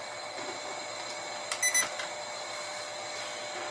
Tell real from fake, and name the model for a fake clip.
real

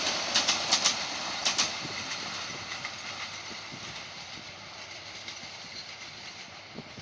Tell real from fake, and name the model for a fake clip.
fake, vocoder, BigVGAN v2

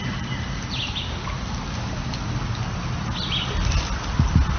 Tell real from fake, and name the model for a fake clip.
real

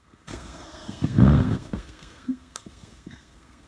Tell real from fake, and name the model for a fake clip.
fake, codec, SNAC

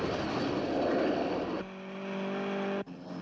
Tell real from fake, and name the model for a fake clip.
real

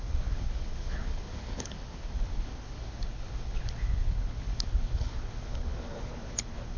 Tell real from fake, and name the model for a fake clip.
fake, codec, HILCodec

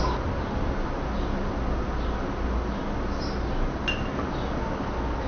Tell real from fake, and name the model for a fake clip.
real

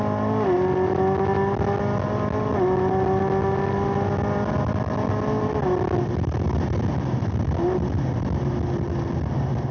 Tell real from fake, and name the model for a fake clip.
real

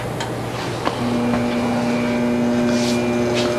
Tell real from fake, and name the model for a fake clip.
real